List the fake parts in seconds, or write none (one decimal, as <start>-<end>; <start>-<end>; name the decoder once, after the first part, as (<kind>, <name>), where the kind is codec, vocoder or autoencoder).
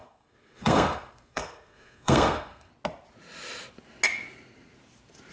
0.0-2.7 (codec, SNAC)